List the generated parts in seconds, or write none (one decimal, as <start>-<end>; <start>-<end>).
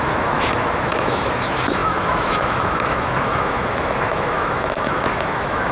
0.0-5.7